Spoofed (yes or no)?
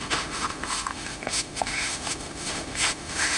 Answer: yes